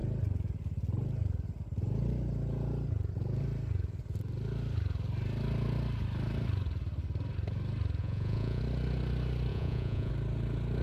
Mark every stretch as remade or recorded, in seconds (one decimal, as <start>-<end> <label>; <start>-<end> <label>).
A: 0.0-8.0 recorded; 8.0-8.6 remade; 8.6-9.5 recorded; 9.5-10.1 remade; 10.1-10.8 recorded